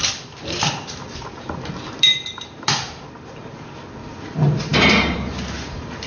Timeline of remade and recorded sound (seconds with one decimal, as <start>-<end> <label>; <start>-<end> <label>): 0.0-6.1 remade

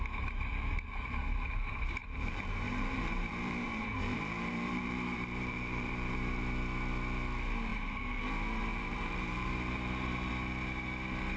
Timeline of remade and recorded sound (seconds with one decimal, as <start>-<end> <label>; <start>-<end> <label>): 0.0-2.0 recorded; 2.0-6.4 remade; 6.4-7.7 recorded; 7.7-8.2 remade; 8.2-8.6 recorded; 8.6-10.3 remade; 10.3-11.4 recorded

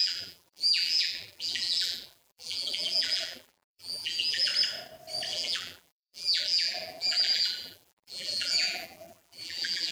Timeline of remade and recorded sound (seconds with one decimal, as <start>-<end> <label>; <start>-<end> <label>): 0.0-4.5 remade; 4.5-5.3 recorded; 5.3-9.9 remade

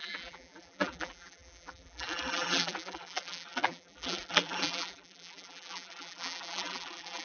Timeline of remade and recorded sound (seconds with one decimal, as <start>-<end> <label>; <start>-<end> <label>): 0.0-7.2 remade